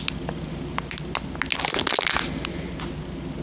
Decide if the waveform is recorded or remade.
recorded